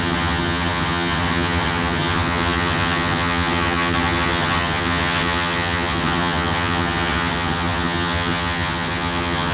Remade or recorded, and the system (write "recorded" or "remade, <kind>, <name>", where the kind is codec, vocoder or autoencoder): remade, vocoder, HiFi-GAN